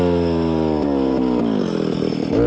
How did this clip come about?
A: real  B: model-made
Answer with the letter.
A